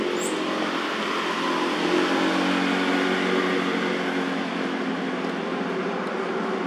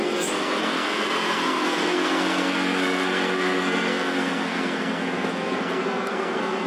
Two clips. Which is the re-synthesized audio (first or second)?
second